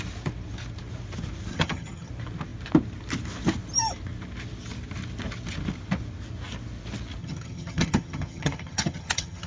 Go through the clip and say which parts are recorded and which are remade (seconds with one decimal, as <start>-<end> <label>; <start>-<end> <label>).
0.0-1.5 recorded; 1.5-2.1 remade; 2.1-7.2 recorded; 7.2-9.5 remade